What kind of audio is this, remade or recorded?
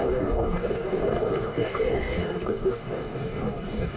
remade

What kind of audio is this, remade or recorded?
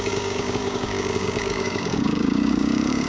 remade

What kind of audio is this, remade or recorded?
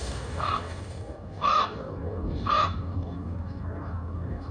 remade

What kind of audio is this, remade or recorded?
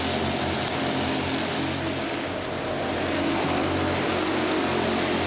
recorded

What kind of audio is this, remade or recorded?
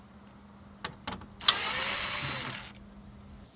recorded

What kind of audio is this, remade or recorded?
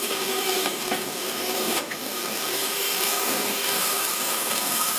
remade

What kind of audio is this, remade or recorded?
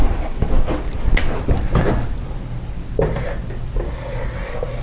recorded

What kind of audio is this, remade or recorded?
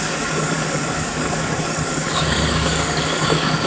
remade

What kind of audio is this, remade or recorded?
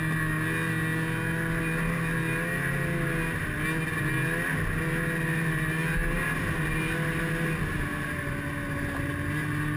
recorded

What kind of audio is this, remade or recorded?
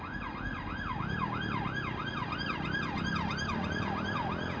recorded